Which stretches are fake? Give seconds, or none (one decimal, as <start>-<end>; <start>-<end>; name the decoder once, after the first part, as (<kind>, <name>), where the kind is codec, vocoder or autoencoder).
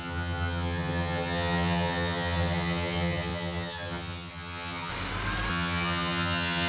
0.0-4.9 (vocoder, HiFi-GAN); 5.5-6.7